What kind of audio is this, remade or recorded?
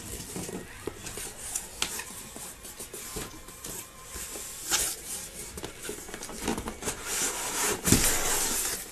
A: recorded